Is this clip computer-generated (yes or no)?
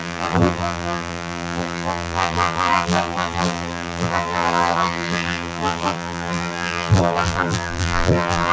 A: yes